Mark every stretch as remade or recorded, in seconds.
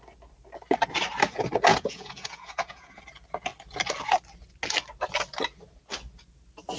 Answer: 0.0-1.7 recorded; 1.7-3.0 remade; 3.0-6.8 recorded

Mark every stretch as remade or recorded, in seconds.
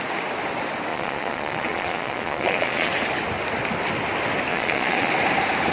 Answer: 0.0-0.9 recorded; 0.9-2.9 remade; 2.9-4.5 recorded; 4.5-5.1 remade; 5.1-5.7 recorded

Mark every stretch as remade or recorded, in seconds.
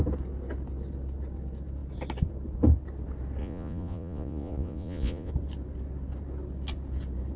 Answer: 0.0-3.4 recorded; 3.4-5.3 remade; 5.3-7.4 recorded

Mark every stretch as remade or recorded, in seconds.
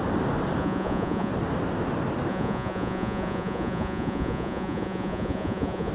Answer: 0.0-0.6 recorded; 0.6-1.3 remade; 1.3-2.3 recorded; 2.3-5.9 remade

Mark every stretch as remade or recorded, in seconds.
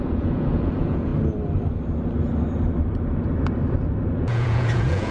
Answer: 0.0-1.1 remade; 1.1-4.2 recorded; 4.2-5.1 remade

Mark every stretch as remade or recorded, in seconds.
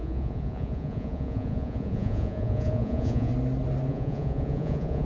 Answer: 0.0-3.3 remade; 3.3-3.9 recorded; 3.9-5.0 remade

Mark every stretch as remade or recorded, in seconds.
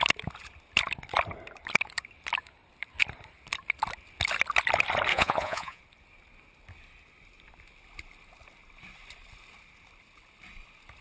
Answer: 0.0-5.1 recorded; 5.1-5.8 remade; 5.8-11.0 recorded